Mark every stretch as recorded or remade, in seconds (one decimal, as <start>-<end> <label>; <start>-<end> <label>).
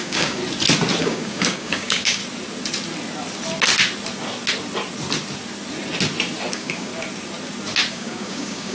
0.0-0.4 remade; 0.4-1.0 recorded; 1.0-2.2 remade; 2.2-6.5 recorded; 6.5-6.9 remade; 6.9-7.9 recorded; 7.9-8.7 remade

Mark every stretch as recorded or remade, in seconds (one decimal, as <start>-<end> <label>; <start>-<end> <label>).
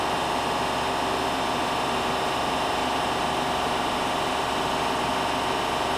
0.0-6.0 recorded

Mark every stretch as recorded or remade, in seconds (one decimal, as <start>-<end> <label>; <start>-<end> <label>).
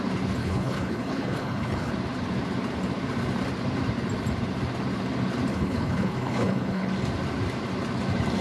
0.0-0.4 recorded; 0.4-1.9 remade; 1.9-5.5 recorded; 5.5-6.9 remade; 6.9-8.4 recorded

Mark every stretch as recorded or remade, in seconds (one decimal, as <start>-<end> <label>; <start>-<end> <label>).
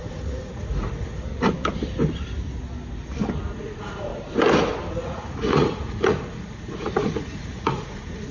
0.0-1.3 remade; 1.3-3.5 recorded; 3.5-4.1 remade; 4.1-4.9 recorded; 4.9-8.3 remade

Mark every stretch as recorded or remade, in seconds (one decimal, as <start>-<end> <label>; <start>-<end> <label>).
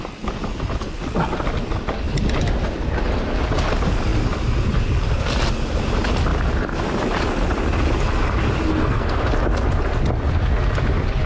0.0-8.7 recorded; 8.7-9.2 remade; 9.2-11.3 recorded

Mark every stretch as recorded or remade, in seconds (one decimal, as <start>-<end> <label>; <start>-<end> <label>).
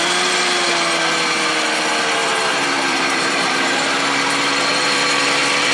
0.0-2.2 recorded; 2.2-5.7 remade